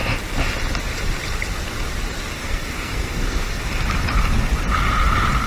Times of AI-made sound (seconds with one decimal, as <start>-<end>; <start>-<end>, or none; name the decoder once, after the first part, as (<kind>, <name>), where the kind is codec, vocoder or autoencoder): 2.4-3.6 (codec, SNAC)